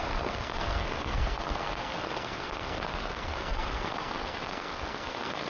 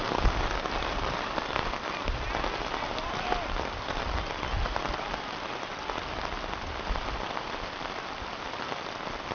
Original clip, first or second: second